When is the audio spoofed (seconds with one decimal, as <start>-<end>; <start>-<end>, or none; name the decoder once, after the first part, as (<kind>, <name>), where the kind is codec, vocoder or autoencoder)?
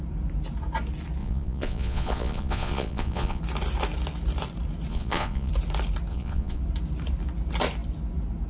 1.2-3.4 (vocoder, Vocos); 4.9-5.5; 6.1-6.6